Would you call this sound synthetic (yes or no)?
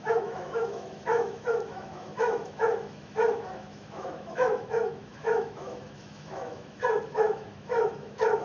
yes